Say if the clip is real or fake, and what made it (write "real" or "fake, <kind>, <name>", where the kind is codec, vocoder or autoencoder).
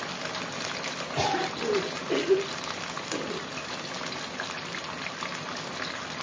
real